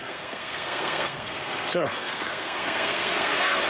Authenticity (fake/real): fake